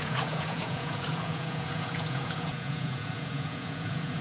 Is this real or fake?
fake